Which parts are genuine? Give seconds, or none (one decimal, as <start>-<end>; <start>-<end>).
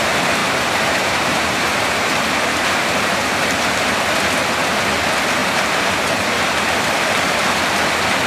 0.0-0.4; 3.5-5.4; 5.9-8.3